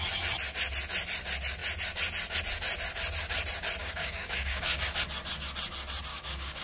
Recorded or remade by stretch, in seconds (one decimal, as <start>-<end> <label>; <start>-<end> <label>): 0.0-3.8 recorded; 3.8-4.8 remade; 4.8-6.1 recorded; 6.1-6.6 remade